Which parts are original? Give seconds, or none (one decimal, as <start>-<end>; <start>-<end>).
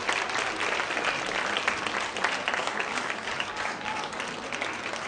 0.0-2.6; 4.2-5.1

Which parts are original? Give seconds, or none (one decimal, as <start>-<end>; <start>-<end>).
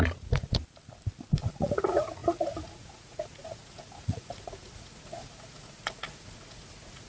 0.6-1.5